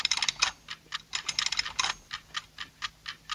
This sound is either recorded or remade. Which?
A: recorded